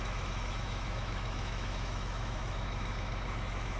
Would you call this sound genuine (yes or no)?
no